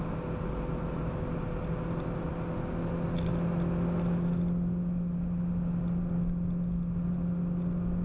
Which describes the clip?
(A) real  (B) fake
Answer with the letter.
A